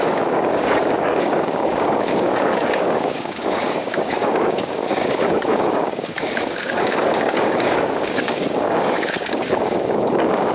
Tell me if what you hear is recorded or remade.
remade